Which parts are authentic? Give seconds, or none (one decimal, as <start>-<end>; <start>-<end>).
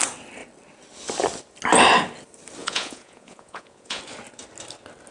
0.0-2.6; 4.0-5.1